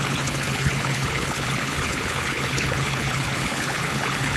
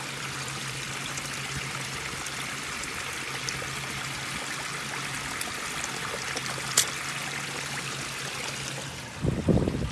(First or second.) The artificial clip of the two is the first